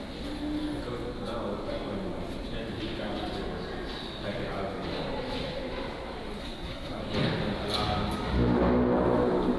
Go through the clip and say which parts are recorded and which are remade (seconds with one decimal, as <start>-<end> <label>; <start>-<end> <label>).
0.0-6.4 recorded; 6.4-7.0 remade; 7.0-9.6 recorded